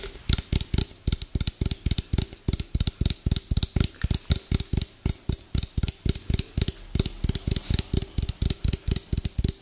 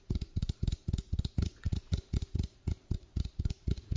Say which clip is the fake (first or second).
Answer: second